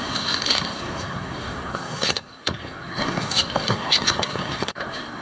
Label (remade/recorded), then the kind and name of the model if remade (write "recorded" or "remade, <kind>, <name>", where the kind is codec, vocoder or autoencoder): remade, codec, SNAC